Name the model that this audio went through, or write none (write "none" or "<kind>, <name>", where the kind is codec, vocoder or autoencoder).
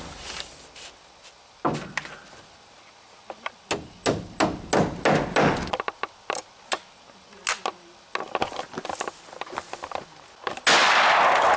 none